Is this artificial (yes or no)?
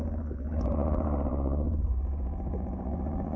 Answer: yes